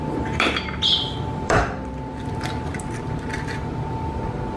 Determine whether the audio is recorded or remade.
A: remade